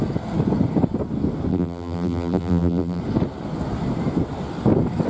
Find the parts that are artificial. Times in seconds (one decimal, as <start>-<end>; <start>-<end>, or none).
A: 1.5-3.0